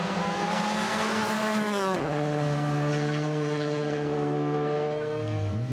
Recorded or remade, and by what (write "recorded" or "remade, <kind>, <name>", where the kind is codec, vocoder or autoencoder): remade, codec, SNAC